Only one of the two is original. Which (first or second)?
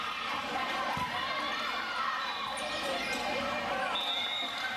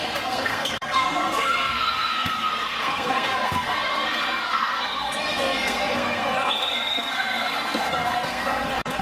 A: first